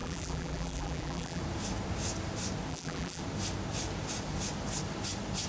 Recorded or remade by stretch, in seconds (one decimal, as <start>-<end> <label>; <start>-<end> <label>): 0.0-1.4 remade; 1.4-2.7 recorded; 2.7-3.2 remade; 3.2-5.5 recorded